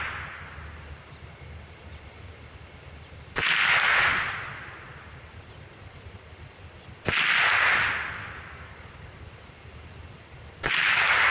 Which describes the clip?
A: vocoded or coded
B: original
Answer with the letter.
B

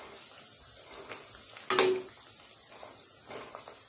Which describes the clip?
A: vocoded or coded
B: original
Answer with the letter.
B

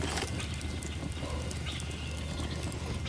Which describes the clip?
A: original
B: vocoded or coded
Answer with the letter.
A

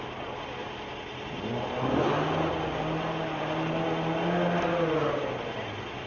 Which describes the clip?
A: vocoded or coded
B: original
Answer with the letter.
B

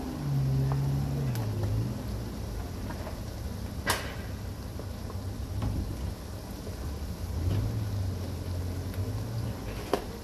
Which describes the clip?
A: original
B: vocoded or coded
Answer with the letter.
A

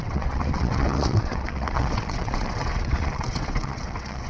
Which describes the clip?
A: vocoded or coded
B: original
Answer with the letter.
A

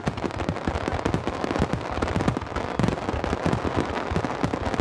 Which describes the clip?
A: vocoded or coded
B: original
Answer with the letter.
B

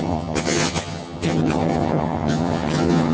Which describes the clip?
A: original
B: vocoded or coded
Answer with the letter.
B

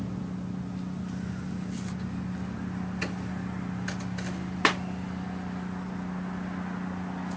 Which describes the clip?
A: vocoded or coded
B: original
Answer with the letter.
B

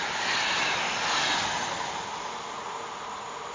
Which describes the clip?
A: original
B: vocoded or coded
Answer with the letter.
A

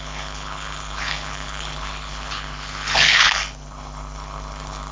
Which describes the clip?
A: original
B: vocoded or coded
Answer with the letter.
B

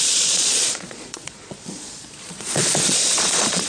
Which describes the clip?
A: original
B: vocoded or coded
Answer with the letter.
B